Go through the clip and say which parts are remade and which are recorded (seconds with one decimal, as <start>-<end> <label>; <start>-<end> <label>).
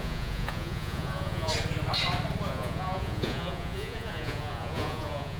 0.0-1.5 remade; 1.5-2.5 recorded; 2.5-5.4 remade